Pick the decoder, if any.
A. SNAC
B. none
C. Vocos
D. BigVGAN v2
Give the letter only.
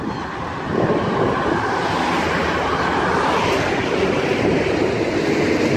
B